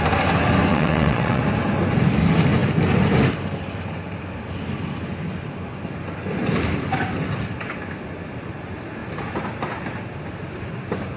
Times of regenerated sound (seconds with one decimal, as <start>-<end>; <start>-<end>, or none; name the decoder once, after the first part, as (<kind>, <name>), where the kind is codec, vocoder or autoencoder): 0.7-1.4 (vocoder, WaveNeXt)